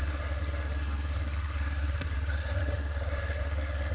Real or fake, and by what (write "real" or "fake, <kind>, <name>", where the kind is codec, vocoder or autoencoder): fake, codec, SNAC